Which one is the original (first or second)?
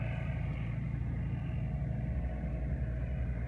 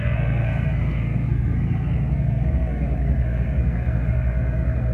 first